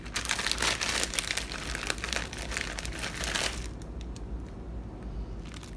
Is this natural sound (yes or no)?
yes